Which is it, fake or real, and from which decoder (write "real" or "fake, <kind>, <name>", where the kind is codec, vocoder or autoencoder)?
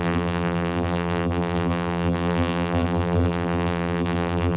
fake, vocoder, BigVGAN v2